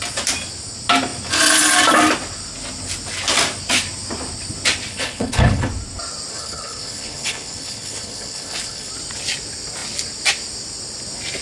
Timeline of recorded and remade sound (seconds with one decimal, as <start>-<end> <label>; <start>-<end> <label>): 0.0-4.9 recorded; 4.9-5.7 remade; 5.7-6.3 recorded; 6.3-8.9 remade; 8.9-11.4 recorded